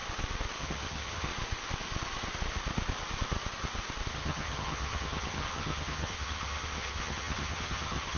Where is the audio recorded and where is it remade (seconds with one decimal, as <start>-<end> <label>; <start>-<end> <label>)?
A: 0.0-0.6 recorded; 0.6-1.3 remade; 1.3-4.1 recorded; 4.1-8.2 remade